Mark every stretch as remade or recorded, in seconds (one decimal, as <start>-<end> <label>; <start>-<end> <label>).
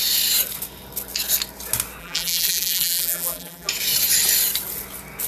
0.0-2.0 recorded; 2.0-3.7 remade; 3.7-5.3 recorded